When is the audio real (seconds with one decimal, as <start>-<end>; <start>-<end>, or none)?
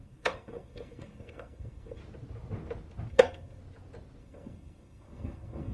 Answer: 2.0-3.1; 3.6-4.2